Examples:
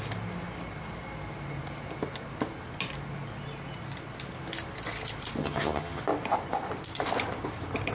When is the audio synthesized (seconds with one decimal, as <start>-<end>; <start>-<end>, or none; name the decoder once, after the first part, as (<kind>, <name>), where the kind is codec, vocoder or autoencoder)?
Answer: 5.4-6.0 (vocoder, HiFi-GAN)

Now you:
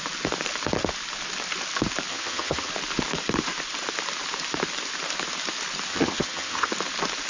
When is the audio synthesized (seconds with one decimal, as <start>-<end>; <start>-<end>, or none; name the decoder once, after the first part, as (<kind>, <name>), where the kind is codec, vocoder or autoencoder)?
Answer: 2.1-2.7 (vocoder, HiFi-GAN); 5.9-6.7

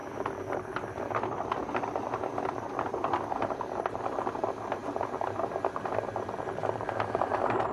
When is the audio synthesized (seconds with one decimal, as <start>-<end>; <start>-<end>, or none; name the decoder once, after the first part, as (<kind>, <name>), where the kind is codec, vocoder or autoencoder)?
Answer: none